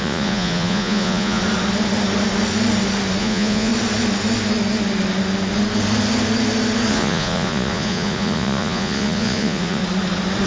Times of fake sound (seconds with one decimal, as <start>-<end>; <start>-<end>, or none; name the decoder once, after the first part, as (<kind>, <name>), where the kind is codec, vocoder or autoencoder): 0.0-1.4 (vocoder, Vocos); 3.2-3.7; 6.9-9.8